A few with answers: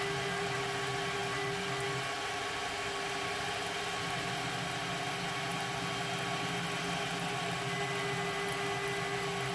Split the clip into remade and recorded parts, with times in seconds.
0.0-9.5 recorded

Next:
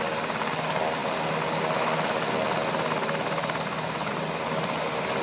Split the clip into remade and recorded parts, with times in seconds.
0.0-5.2 recorded

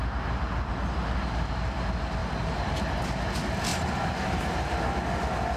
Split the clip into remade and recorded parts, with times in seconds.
0.0-0.7 recorded; 0.7-1.5 remade; 1.5-3.7 recorded; 3.7-4.8 remade; 4.8-5.6 recorded